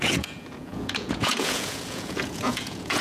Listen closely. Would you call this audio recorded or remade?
remade